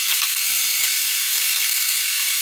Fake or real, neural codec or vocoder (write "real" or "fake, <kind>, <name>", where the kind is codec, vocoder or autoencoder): fake, codec, SNAC